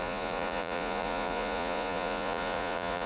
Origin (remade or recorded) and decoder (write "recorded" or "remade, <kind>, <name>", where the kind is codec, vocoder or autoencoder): remade, vocoder, Vocos